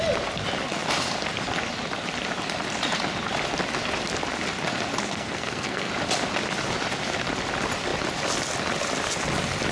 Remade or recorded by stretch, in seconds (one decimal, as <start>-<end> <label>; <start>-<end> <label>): 0.0-5.1 recorded; 5.1-5.9 remade; 5.9-9.7 recorded